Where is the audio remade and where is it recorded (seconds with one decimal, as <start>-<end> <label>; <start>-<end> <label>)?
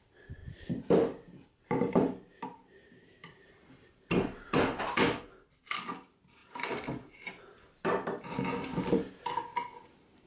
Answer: 0.0-0.4 recorded; 0.4-4.1 remade; 4.1-8.7 recorded; 8.7-9.3 remade; 9.3-10.3 recorded